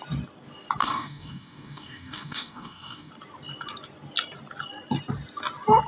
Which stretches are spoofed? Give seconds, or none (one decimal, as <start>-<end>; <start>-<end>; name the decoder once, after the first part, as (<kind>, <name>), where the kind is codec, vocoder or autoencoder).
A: 0.8-3.1 (codec, DAC)